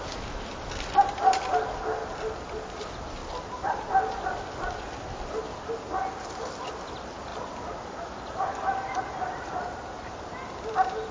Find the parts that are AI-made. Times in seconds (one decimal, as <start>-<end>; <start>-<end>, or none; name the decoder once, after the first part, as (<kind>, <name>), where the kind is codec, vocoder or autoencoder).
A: none